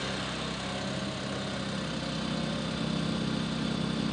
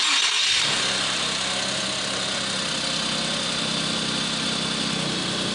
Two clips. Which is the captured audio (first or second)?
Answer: first